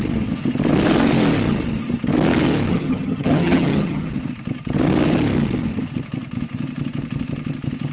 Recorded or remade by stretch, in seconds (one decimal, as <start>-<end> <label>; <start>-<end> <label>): 0.0-2.7 recorded; 2.7-4.1 remade; 4.1-7.9 recorded